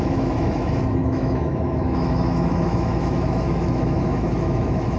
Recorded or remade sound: remade